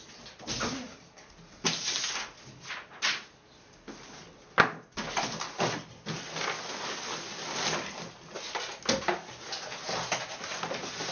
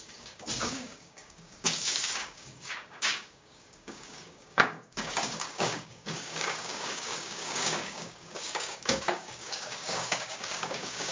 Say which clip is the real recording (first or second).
first